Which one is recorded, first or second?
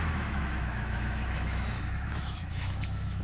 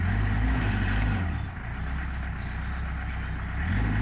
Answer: second